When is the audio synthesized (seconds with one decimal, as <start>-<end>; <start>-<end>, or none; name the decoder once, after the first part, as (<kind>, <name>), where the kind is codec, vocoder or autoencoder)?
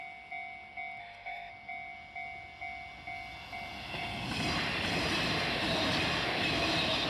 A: 1.0-1.5 (autoencoder, DAC-VAE)